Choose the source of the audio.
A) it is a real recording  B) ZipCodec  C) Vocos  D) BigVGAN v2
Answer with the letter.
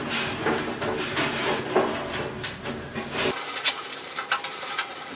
D